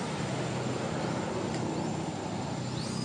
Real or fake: real